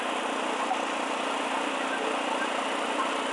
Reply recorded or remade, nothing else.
recorded